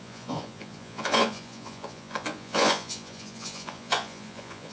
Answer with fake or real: fake